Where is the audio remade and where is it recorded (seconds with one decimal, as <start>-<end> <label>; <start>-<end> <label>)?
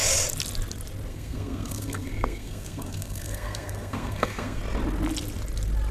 0.0-1.1 recorded; 1.1-4.6 remade; 4.6-5.9 recorded